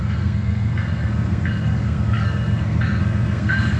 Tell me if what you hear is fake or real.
fake